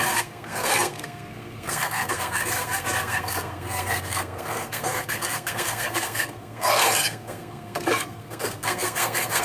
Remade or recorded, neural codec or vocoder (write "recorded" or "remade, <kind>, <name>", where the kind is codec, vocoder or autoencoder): remade, codec, SNAC